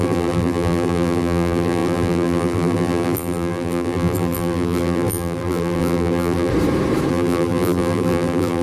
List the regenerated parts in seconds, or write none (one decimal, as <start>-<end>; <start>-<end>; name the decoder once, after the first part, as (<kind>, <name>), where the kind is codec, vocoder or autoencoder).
0.0-6.5 (vocoder, BigVGAN v2); 7.1-8.6